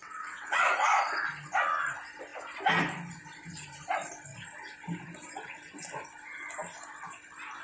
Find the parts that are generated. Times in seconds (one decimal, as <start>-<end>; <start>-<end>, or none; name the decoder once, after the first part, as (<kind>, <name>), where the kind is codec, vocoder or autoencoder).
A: 0.0-0.7 (vocoder, WaveNeXt)